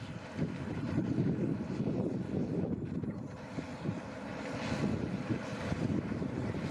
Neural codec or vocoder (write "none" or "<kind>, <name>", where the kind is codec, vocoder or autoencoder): none